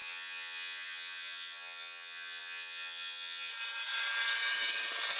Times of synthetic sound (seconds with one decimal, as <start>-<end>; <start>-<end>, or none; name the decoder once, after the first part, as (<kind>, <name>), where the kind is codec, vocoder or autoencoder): 0.0-3.5 (vocoder, HiFi-GAN)